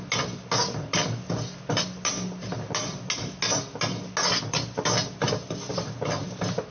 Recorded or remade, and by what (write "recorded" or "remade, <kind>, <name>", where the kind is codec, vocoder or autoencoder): recorded